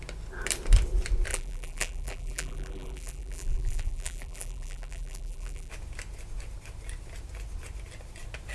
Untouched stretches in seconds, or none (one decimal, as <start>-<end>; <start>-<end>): 0.0-1.3; 5.7-8.5